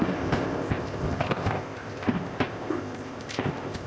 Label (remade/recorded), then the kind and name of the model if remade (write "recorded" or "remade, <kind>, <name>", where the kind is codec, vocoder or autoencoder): remade, codec, ZipCodec